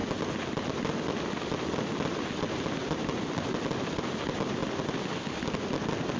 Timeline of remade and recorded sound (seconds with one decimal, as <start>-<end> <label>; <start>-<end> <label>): 0.0-4.6 recorded; 4.6-5.3 remade; 5.3-6.2 recorded